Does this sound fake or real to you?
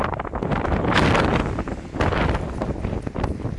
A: real